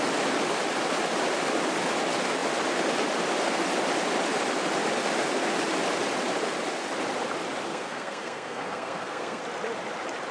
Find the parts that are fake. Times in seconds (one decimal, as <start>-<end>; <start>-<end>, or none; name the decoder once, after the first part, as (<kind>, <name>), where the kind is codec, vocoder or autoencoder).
7.7-9.4 (codec, SNAC)